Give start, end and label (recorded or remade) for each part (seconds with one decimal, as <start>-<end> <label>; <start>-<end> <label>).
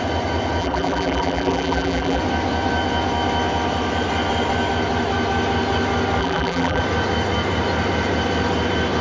0.0-0.6 recorded; 0.6-2.2 remade; 2.2-6.2 recorded; 6.2-6.8 remade; 6.8-9.0 recorded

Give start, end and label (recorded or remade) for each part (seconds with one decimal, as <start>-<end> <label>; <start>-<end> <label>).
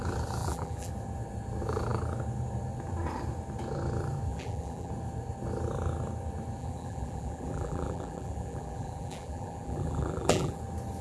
0.0-0.4 recorded; 0.4-0.9 remade; 0.9-4.3 recorded; 4.3-4.9 remade; 4.9-6.6 recorded; 6.6-10.6 remade; 10.6-11.0 recorded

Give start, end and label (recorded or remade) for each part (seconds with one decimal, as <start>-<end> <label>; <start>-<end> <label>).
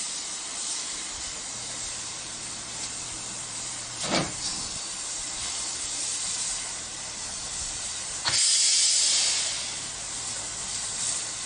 0.0-8.2 remade; 8.2-10.6 recorded; 10.6-11.5 remade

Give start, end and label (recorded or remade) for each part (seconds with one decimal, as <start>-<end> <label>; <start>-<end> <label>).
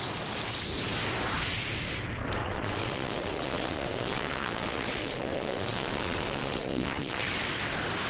0.0-2.4 recorded; 2.4-7.3 remade; 7.3-8.1 recorded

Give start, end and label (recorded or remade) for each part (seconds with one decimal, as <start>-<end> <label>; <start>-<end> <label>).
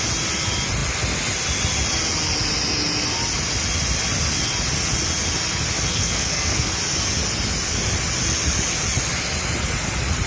0.0-5.9 recorded; 5.9-6.7 remade; 6.7-10.3 recorded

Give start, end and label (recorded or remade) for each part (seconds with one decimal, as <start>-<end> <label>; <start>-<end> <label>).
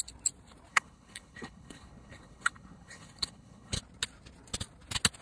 0.0-0.7 recorded; 0.7-3.8 remade; 3.8-5.2 recorded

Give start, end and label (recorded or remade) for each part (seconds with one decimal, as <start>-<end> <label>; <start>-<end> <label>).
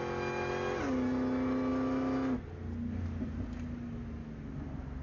0.0-5.0 recorded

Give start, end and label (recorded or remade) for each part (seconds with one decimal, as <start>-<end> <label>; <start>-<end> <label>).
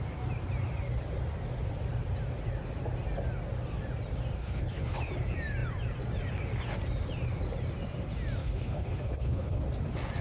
0.0-4.4 recorded; 4.4-5.0 remade; 5.0-8.4 recorded; 8.4-9.6 remade; 9.6-10.2 recorded